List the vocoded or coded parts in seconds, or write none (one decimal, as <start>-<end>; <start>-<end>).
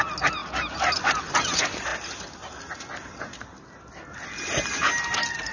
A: none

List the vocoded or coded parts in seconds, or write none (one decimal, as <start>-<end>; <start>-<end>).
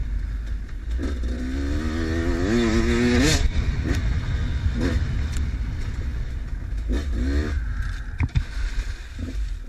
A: none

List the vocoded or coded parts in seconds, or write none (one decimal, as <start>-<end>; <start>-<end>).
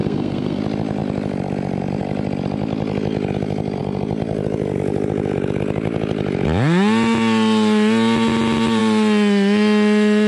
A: 0.0-0.6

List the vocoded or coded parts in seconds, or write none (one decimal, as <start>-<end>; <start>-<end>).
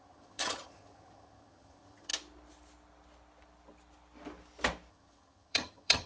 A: 0.0-2.1; 4.9-6.1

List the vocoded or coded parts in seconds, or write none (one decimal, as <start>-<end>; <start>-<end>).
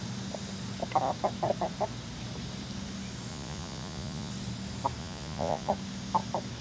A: 3.3-4.3; 5.0-5.7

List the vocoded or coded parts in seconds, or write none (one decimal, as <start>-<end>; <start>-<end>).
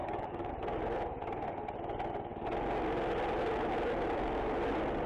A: 0.0-0.5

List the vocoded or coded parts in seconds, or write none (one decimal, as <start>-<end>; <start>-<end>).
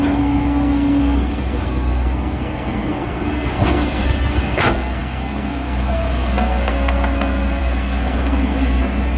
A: 0.0-9.2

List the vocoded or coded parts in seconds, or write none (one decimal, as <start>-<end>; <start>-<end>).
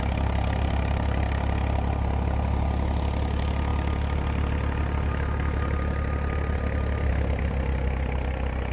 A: none